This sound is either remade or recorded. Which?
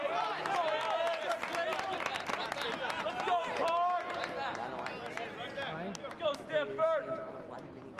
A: recorded